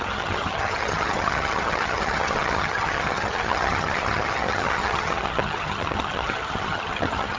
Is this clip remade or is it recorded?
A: remade